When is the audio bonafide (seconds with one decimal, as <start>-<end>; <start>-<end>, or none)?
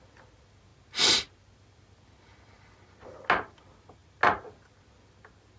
0.0-5.6